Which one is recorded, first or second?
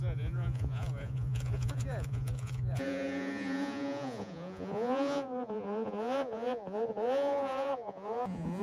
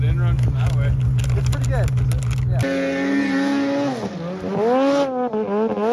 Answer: second